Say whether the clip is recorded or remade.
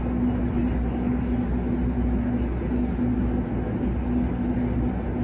recorded